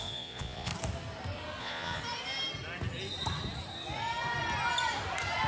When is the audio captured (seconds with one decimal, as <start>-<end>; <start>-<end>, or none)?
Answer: 0.7-1.6; 2.0-5.5